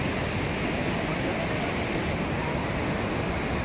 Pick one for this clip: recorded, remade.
recorded